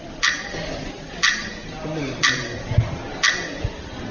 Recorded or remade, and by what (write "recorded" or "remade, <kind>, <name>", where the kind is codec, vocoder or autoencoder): recorded